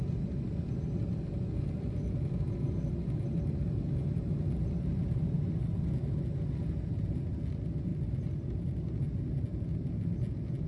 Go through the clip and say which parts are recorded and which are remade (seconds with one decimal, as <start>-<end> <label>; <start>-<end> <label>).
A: 0.0-10.7 recorded